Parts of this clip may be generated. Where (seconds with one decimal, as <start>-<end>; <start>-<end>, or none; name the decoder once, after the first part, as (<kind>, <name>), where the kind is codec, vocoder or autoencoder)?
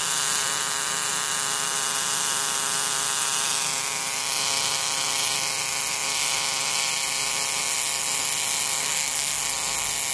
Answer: 8.8-9.4 (codec, SNAC)